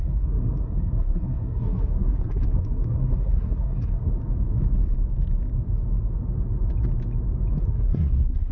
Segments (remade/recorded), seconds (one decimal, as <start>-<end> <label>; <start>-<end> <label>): 0.0-4.1 remade; 4.1-7.5 recorded; 7.5-8.5 remade